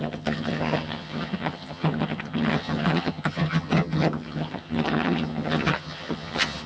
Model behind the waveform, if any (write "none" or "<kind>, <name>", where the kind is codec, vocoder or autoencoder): vocoder, HiFi-GAN